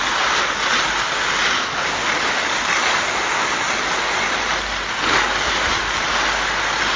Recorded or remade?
recorded